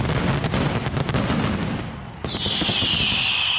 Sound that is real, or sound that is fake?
real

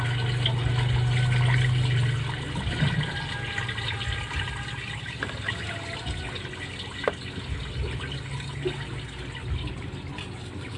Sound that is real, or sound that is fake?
real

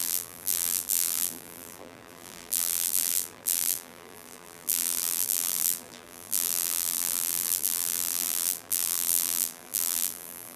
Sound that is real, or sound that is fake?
fake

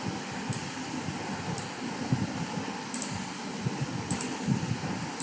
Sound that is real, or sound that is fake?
real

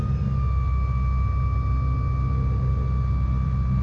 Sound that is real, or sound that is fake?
real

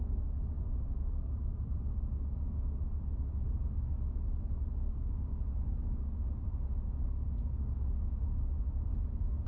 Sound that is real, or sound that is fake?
real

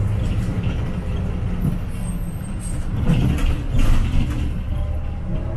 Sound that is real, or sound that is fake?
real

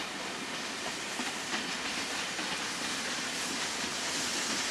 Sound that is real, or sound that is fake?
real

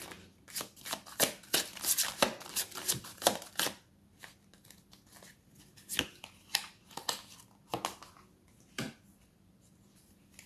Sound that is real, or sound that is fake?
real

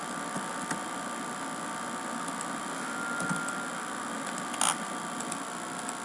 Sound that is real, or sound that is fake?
real